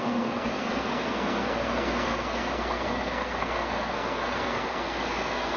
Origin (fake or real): fake